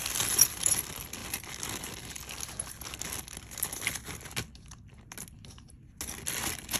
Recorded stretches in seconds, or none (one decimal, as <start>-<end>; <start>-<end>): 0.0-6.8